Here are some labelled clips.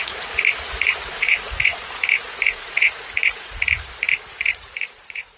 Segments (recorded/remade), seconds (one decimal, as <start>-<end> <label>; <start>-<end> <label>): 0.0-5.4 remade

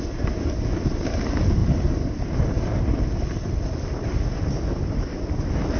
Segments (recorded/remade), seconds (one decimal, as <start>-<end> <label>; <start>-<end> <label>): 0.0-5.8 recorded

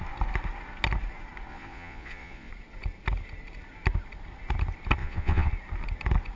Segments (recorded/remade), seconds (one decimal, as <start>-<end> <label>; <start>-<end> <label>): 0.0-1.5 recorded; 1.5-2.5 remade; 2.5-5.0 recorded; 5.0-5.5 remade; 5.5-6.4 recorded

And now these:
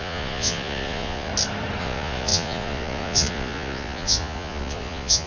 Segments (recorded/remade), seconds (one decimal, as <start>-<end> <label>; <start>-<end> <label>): 0.0-1.3 remade; 1.3-1.8 recorded; 1.8-5.3 remade

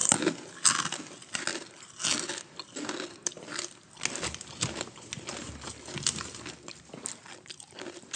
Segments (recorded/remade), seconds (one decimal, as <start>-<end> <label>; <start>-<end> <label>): 0.0-8.2 recorded